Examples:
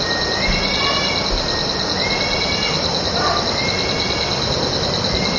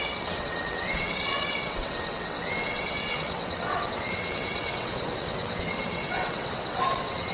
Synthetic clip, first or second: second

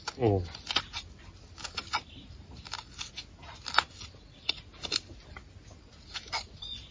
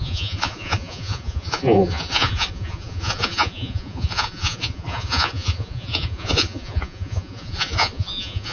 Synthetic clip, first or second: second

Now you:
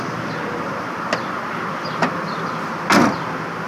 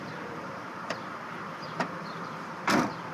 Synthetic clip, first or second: second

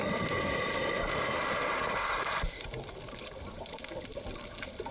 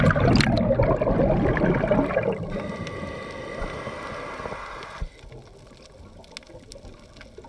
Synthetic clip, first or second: first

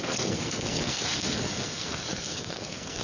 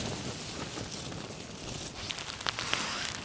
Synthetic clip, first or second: first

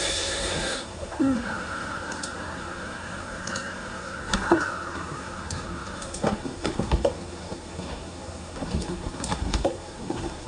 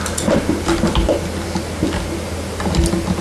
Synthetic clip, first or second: first